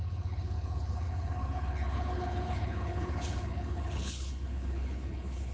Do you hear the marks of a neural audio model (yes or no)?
yes